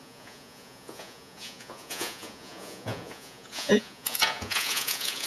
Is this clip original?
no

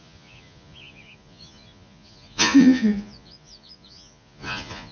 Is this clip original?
no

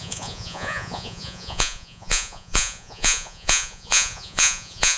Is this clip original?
no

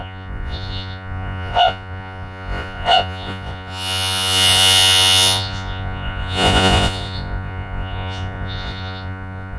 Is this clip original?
no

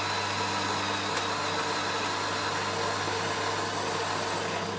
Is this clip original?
yes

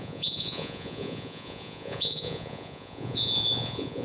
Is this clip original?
no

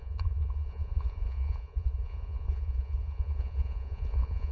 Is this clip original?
no